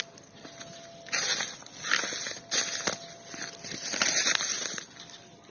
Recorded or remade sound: recorded